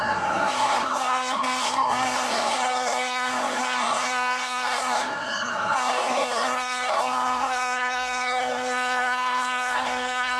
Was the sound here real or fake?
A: fake